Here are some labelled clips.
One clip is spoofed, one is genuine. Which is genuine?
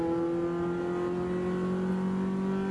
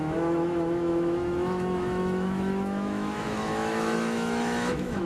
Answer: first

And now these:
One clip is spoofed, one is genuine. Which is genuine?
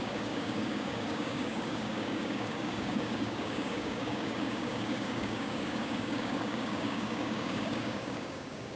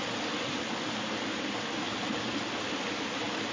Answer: second